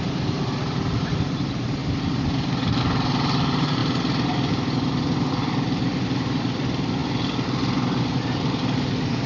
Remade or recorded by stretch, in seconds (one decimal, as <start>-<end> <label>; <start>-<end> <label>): 0.0-1.8 remade; 1.8-2.8 recorded; 2.8-3.8 remade; 3.8-5.3 recorded; 5.3-7.0 remade; 7.0-8.0 recorded; 8.0-9.3 remade